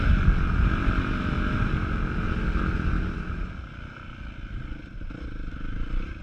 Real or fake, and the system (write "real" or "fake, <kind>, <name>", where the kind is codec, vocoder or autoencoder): real